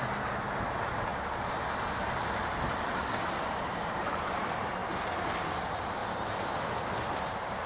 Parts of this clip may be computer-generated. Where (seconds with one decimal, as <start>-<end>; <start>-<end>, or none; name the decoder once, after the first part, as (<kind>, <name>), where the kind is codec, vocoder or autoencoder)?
0.0-1.1 (vocoder, BigVGAN v2); 3.5-4.8; 5.5-6.0; 7.2-7.7